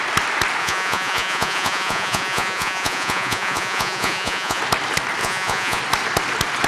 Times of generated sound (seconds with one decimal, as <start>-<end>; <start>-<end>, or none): 0.6-4.6; 5.2-5.8

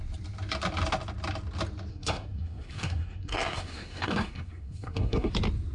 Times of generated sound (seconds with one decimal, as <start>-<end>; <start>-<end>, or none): 1.9-5.3

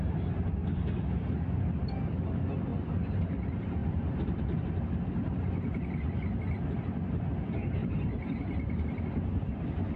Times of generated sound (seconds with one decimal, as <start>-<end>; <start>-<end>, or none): 2.7-3.2; 3.8-4.4; 7.8-9.0

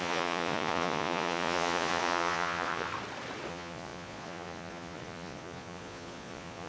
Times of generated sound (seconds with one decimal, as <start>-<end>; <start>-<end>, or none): 0.0-2.9; 3.5-6.7

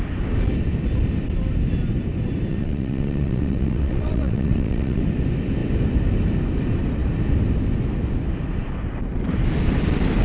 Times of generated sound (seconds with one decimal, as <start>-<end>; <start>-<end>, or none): 2.5-5.0